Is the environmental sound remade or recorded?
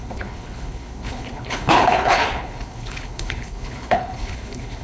remade